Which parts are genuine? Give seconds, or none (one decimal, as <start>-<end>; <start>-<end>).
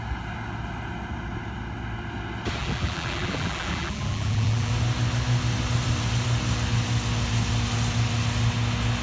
0.0-2.6; 4.7-9.0